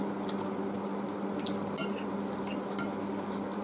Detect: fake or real real